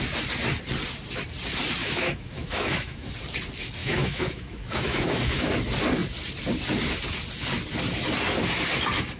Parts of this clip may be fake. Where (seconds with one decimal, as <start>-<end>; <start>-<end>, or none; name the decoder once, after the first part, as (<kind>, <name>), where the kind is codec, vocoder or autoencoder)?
1.8-3.1 (autoencoder, DAC-VAE); 3.8-5.5